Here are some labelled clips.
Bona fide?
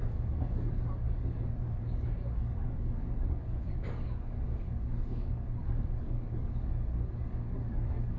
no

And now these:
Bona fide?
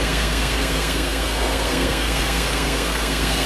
no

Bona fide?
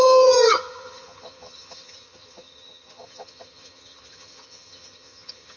no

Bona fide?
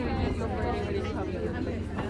yes